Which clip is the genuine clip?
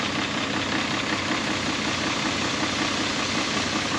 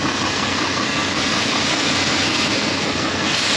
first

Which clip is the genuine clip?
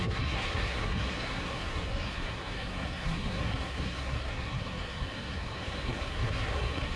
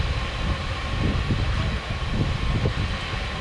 second